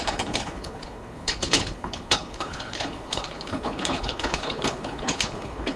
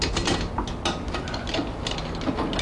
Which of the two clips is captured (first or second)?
second